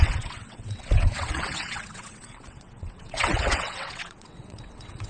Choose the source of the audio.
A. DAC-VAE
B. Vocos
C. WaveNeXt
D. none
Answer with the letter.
C